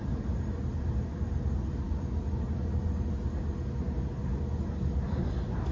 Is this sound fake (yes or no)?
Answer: no